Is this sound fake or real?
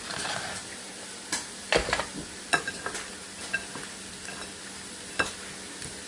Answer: real